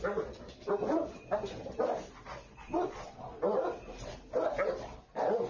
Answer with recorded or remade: recorded